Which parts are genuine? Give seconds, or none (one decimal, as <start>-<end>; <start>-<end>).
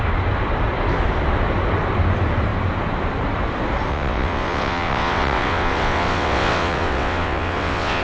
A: 0.0-3.9